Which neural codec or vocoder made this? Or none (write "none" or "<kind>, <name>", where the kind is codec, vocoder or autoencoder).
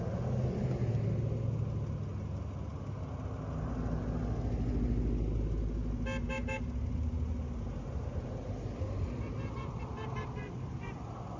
none